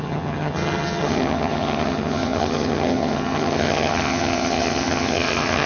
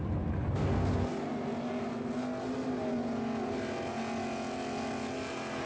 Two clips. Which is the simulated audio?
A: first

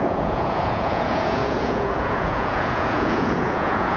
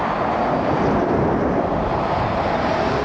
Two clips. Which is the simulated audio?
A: first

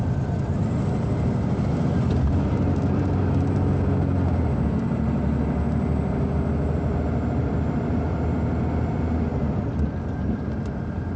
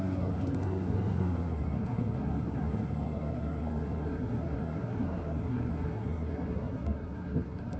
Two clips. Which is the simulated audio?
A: second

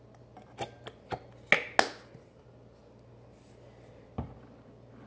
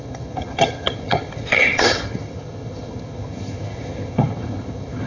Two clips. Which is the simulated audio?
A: second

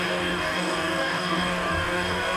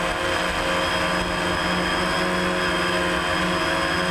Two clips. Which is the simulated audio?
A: first